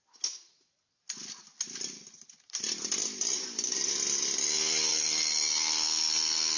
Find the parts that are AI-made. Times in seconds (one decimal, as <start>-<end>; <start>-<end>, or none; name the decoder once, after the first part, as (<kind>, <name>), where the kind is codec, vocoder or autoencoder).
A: none